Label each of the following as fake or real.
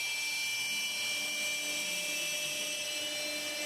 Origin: real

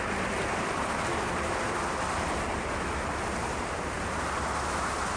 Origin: real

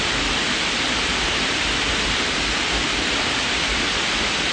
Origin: real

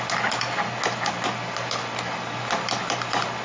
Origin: real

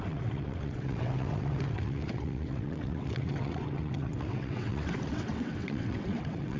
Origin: fake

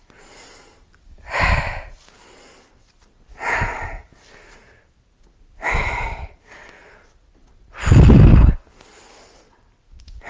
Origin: real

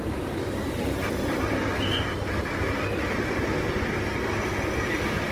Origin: real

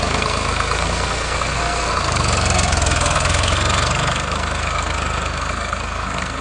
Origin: fake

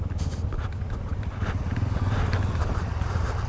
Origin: real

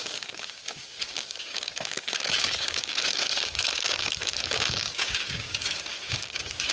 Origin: fake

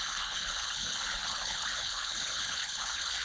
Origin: fake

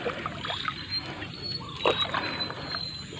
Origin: real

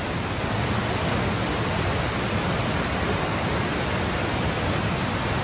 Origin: real